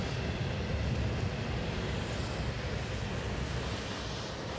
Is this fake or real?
real